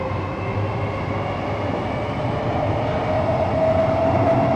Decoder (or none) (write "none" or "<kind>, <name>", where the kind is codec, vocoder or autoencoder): none